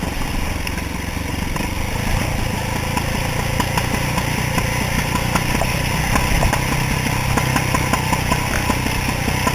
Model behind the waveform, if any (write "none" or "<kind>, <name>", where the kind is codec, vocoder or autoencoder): none